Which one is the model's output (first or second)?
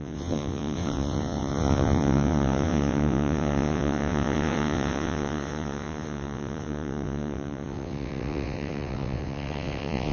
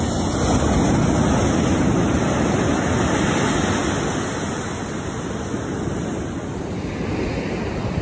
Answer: first